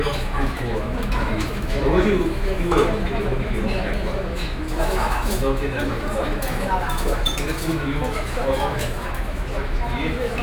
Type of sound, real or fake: fake